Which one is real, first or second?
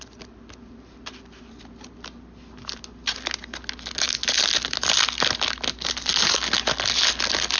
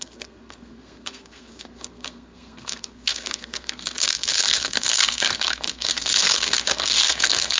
first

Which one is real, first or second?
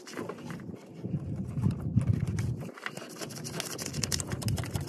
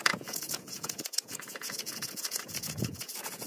first